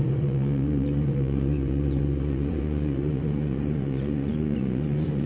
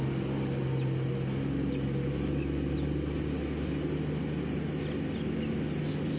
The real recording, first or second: second